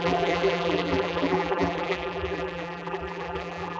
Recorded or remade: remade